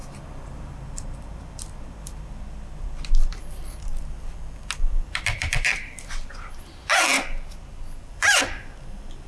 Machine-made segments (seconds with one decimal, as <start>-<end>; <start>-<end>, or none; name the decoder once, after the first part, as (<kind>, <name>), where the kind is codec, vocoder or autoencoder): 0.0-3.9 (vocoder, BigVGAN v2); 4.8-7.1; 8.1-9.3